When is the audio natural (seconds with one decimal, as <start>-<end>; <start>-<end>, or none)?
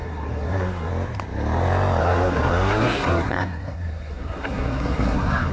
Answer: 0.9-2.0